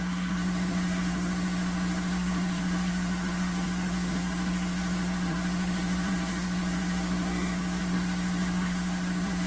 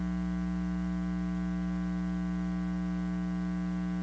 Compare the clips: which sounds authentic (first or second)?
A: second